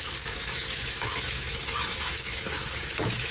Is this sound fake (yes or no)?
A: yes